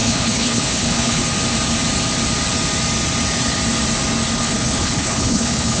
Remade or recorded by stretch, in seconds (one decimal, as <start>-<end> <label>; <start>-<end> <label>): 0.0-1.2 remade; 1.2-4.4 recorded; 4.4-5.8 remade